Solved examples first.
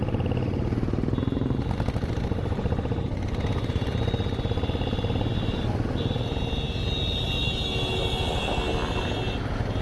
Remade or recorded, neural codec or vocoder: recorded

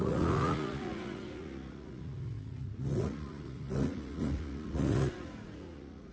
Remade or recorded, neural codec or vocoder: remade, vocoder, Vocos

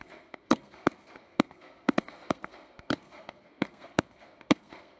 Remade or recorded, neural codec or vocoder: remade, codec, SNAC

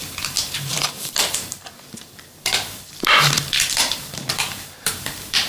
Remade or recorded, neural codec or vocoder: remade, vocoder, BigVGAN v2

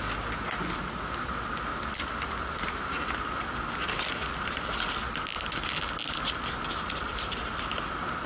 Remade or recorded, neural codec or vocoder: recorded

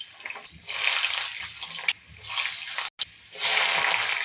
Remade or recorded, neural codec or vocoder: recorded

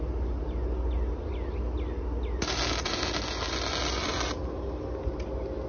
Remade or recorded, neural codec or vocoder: recorded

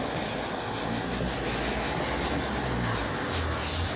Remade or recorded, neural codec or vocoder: recorded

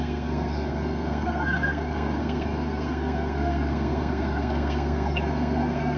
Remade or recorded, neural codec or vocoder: remade, codec, SNAC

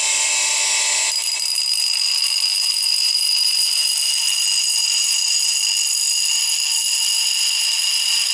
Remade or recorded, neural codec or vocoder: recorded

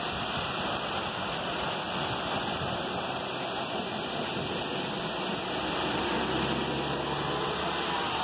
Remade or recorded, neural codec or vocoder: recorded